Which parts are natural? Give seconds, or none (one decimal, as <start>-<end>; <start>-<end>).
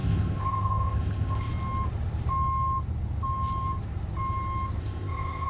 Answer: 1.5-4.8